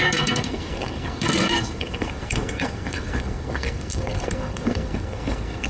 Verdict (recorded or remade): remade